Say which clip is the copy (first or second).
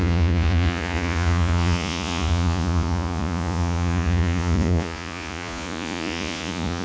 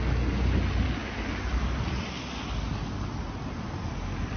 first